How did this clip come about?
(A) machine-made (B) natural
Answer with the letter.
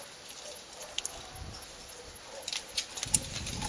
B